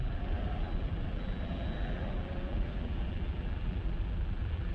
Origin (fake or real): fake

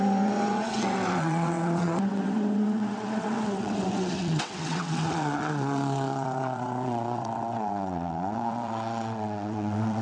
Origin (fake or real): fake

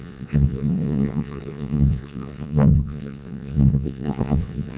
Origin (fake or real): fake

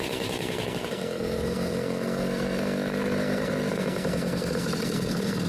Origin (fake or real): fake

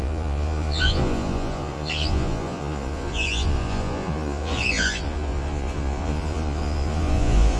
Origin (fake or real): fake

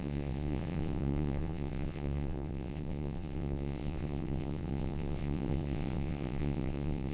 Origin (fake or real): fake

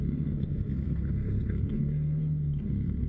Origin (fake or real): fake